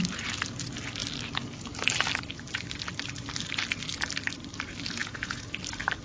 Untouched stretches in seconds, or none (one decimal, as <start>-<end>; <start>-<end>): 0.0-5.0; 5.6-6.0